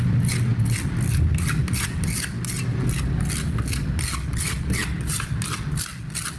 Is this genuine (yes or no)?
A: yes